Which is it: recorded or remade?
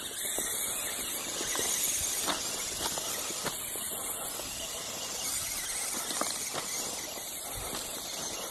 recorded